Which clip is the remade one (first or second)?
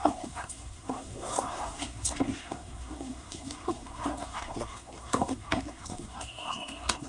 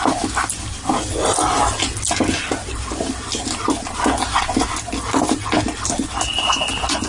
first